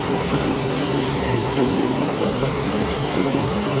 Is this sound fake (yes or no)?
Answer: yes